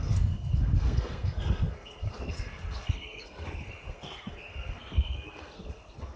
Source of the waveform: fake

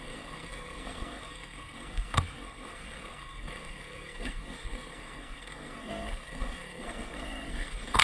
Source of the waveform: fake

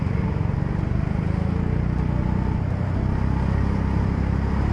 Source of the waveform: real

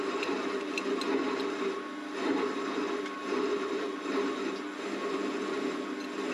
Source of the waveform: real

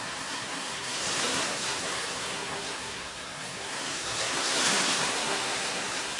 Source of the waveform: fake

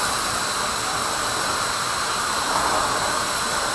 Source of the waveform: real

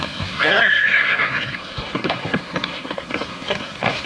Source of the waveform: fake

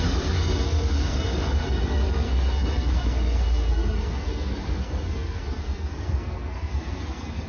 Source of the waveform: fake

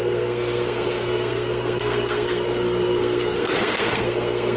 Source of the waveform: fake